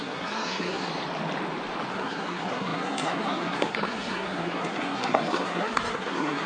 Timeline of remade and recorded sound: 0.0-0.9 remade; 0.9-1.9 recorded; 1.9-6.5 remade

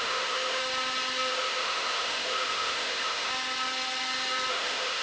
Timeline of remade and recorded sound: 0.0-0.6 remade; 0.6-1.3 recorded; 1.3-3.3 remade; 3.3-4.5 recorded; 4.5-5.0 remade

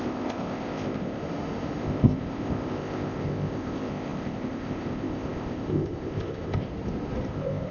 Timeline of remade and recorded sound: 0.0-1.2 remade; 1.2-1.8 recorded; 1.8-6.7 remade; 6.7-7.3 recorded; 7.3-7.7 remade

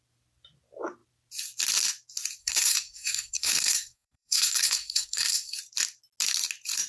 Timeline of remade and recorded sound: 0.0-2.4 recorded; 2.4-5.6 remade; 5.6-6.9 recorded

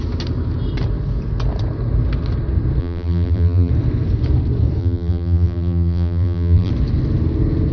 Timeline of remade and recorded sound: 0.0-2.8 recorded; 2.8-3.7 remade; 3.7-4.8 recorded; 4.8-6.7 remade; 6.7-7.7 recorded